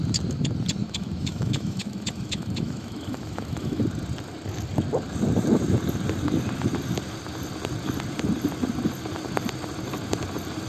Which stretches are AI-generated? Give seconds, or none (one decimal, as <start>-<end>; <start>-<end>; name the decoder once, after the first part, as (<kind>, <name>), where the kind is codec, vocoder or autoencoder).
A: 0.8-3.8 (autoencoder, DAC-VAE)